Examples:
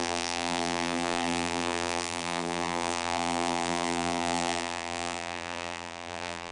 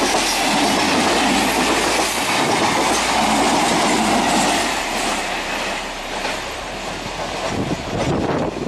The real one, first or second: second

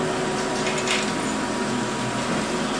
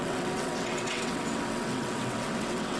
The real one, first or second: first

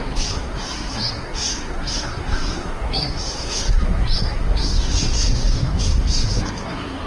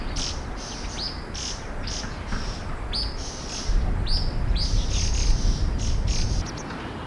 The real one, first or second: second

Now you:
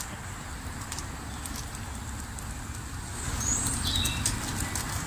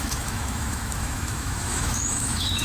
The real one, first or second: first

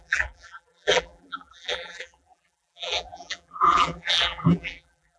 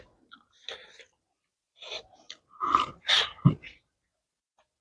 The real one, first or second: second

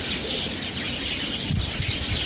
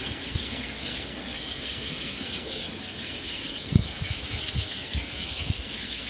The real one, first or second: first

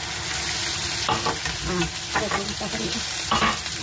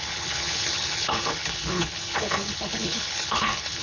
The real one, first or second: first